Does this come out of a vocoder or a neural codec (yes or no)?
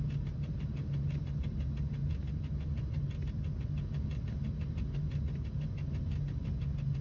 no